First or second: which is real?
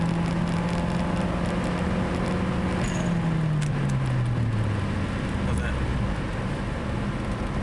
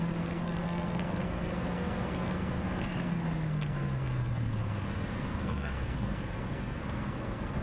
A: first